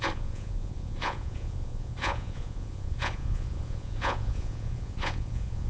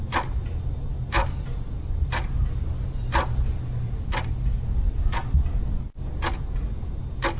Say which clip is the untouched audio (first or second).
second